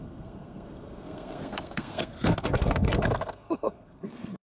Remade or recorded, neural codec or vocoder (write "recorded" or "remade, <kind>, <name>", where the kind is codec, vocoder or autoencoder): remade, codec, SNAC